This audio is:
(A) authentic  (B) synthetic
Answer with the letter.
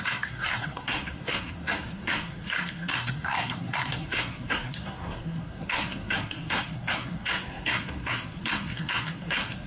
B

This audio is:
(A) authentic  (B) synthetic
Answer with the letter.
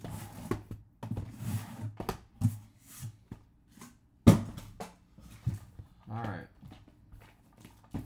A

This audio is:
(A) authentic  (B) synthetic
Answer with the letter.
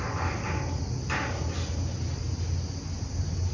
A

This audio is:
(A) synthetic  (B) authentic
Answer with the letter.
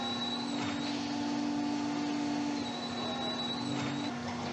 B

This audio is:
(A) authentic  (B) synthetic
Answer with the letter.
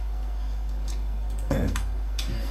B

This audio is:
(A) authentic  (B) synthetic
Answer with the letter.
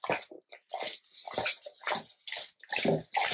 A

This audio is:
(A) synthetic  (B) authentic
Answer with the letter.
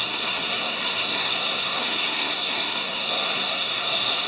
A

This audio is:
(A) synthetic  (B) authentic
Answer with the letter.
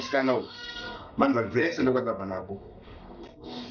A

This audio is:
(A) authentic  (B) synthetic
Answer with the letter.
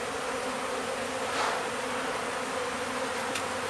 A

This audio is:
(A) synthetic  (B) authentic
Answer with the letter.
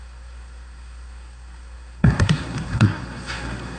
A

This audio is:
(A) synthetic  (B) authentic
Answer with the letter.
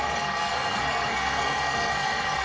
A